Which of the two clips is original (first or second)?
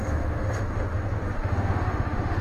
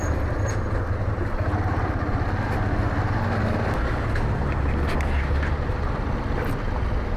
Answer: second